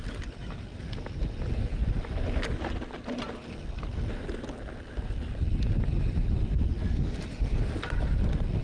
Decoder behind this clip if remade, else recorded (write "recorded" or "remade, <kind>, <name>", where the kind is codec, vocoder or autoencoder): recorded